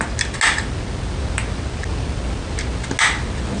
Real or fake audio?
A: real